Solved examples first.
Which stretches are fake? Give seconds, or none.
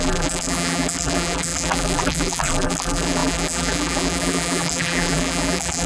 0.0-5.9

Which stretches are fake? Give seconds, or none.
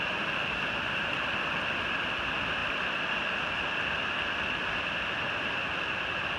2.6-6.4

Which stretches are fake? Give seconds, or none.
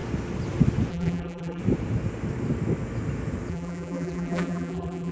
0.9-1.6; 3.5-5.1